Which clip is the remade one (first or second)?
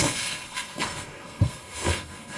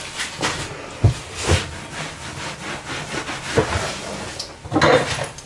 first